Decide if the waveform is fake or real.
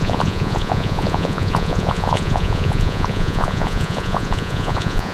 fake